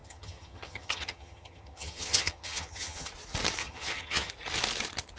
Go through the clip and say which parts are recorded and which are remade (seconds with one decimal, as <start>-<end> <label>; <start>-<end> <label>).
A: 0.0-3.1 remade; 3.1-3.6 recorded; 3.6-4.3 remade; 4.3-5.2 recorded